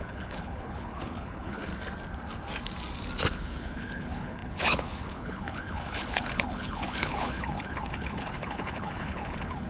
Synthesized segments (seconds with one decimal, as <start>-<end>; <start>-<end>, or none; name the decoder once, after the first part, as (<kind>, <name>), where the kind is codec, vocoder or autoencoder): 0.0-1.7 (codec, HILCodec); 3.3-9.7